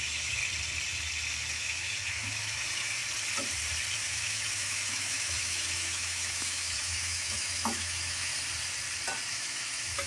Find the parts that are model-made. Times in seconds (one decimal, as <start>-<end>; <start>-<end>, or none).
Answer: 0.0-0.4; 1.5-3.0; 3.9-8.3; 9.3-10.1